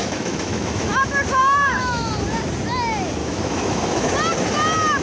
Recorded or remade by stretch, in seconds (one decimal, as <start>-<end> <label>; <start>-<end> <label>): 0.0-0.9 remade; 0.9-1.4 recorded; 1.4-2.1 remade; 2.1-3.2 recorded; 3.2-4.1 remade; 4.1-5.0 recorded